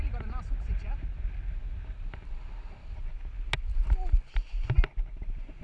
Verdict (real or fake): real